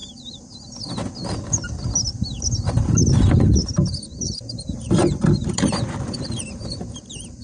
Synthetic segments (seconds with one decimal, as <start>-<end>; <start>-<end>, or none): 0.0-0.7; 3.6-7.4